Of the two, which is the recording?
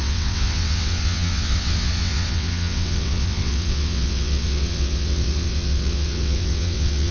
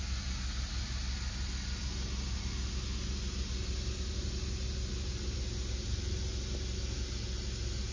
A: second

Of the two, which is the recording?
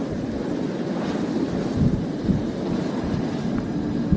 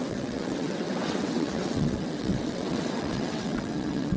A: first